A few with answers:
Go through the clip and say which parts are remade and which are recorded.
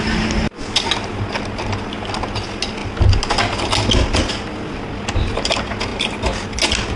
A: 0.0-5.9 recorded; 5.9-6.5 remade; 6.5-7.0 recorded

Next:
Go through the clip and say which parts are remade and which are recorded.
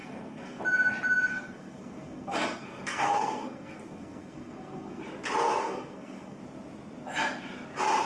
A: 0.0-0.6 remade; 0.6-1.3 recorded; 1.3-5.0 remade; 5.0-5.6 recorded; 5.6-6.4 remade; 6.4-8.1 recorded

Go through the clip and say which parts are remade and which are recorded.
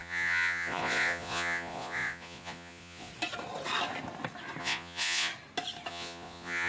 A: 0.0-3.1 remade; 3.1-4.6 recorded; 4.6-5.3 remade; 5.3-5.9 recorded; 5.9-6.7 remade